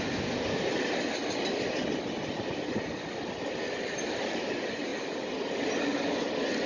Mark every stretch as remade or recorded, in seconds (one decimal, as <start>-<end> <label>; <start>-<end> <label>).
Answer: 0.0-6.7 recorded

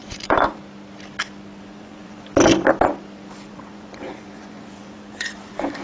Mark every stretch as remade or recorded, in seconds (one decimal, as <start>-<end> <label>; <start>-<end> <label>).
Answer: 0.0-0.6 remade; 0.6-1.6 recorded; 1.6-2.3 remade; 2.3-3.5 recorded; 3.5-5.8 remade

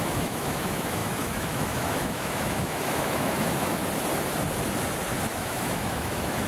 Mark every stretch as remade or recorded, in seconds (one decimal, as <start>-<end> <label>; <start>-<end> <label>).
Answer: 0.0-3.8 remade; 3.8-5.3 recorded; 5.3-6.5 remade

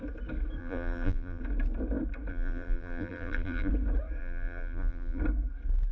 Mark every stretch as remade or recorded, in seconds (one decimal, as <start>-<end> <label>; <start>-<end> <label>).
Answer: 0.0-0.6 recorded; 0.6-1.4 remade; 1.4-2.3 recorded; 2.3-3.7 remade; 3.7-4.2 recorded; 4.2-5.2 remade; 5.2-5.9 recorded

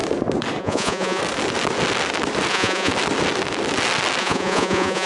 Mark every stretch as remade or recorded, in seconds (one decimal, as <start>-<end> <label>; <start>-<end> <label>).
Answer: 0.0-0.6 recorded; 0.6-1.2 remade; 1.2-2.5 recorded; 2.5-2.9 remade; 2.9-4.2 recorded; 4.2-5.1 remade

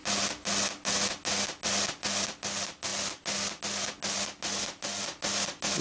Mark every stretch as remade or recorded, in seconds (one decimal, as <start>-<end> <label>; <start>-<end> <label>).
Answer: 0.0-5.8 recorded

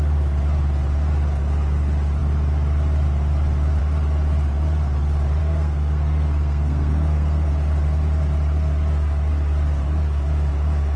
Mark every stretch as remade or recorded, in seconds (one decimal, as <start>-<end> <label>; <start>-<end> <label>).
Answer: 0.0-5.4 recorded; 5.4-7.5 remade; 7.5-11.0 recorded

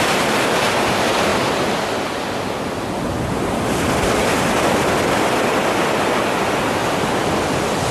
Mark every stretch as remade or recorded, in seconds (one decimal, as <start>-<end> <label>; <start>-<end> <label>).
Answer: 0.0-7.9 recorded